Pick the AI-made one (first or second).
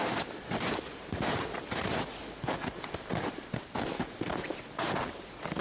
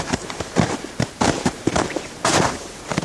second